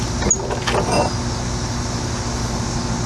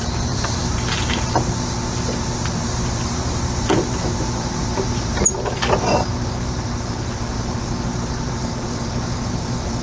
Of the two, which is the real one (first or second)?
first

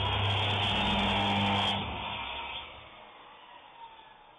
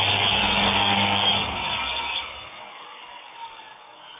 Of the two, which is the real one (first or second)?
first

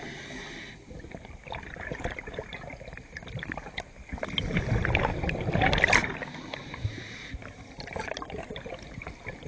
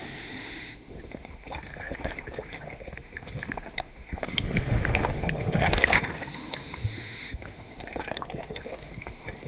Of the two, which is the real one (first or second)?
first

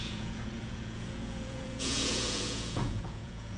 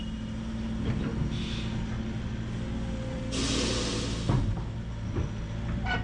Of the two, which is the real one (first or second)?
second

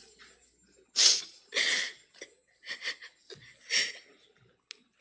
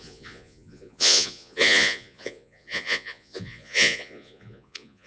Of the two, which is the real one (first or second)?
first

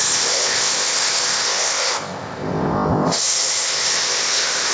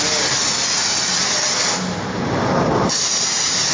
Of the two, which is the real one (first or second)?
second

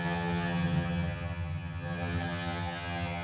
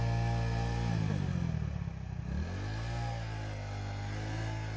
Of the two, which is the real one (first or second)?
second